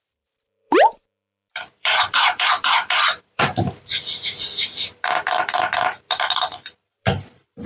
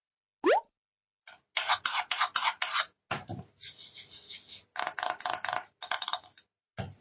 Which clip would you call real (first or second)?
second